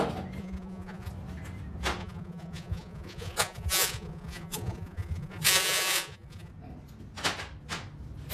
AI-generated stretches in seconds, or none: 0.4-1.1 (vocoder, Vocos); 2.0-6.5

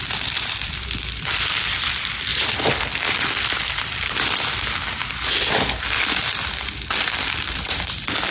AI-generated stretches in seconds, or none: 0.0-2.3 (vocoder, BigVGAN v2); 5.5-8.3

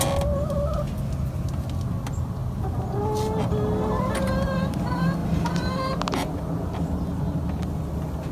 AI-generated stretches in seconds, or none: none

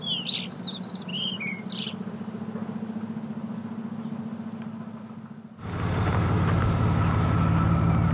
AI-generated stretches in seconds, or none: none

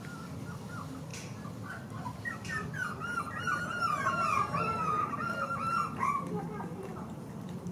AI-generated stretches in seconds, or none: none

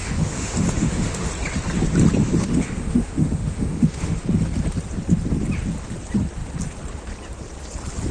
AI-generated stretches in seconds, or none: 0.0-1.3 (autoencoder, DAC-VAE); 2.2-4.2

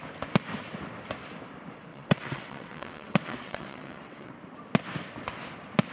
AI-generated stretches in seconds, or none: 1.9-4.3 (vocoder, WaveNeXt)